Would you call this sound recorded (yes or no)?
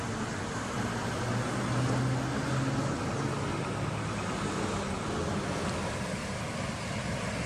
yes